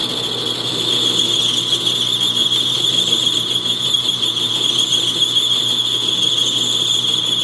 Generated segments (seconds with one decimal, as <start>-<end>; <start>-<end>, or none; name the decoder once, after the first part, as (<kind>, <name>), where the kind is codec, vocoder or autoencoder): 2.4-4.5 (vocoder, BigVGAN v2)